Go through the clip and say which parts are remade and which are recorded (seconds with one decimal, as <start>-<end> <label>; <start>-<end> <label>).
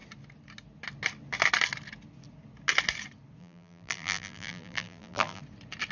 0.0-3.4 recorded; 3.4-5.4 remade; 5.4-5.9 recorded